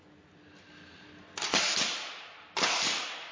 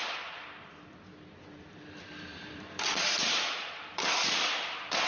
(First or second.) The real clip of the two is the first